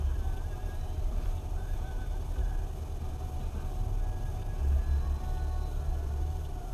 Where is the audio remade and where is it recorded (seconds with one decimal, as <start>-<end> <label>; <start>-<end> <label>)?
0.0-2.1 remade; 2.1-5.9 recorded; 5.9-6.7 remade